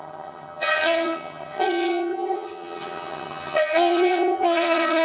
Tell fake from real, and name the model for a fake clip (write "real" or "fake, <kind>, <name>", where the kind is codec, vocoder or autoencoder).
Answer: fake, vocoder, HiFi-GAN